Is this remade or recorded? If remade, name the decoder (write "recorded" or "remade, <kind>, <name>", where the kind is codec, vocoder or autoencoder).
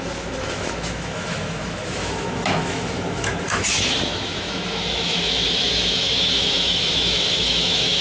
remade, autoencoder, DAC-VAE